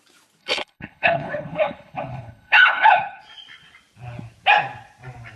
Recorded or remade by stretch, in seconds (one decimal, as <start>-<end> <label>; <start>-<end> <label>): 0.0-0.4 recorded; 0.4-3.2 remade; 3.2-5.4 recorded